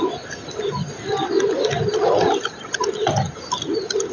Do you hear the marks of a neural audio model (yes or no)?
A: no